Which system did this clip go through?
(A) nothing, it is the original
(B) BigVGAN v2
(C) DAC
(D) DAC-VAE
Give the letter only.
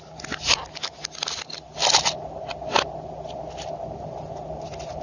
A